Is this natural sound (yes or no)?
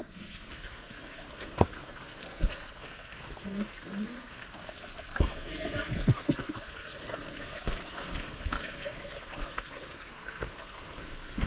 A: no